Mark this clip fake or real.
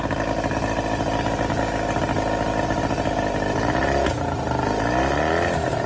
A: real